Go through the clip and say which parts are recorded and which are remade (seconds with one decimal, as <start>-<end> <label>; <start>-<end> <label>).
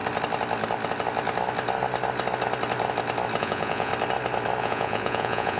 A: 0.0-3.4 recorded; 3.4-3.9 remade; 3.9-4.6 recorded; 4.6-5.6 remade